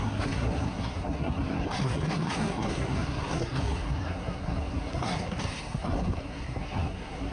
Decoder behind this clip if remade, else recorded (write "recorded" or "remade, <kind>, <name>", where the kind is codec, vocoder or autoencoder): remade, codec, SNAC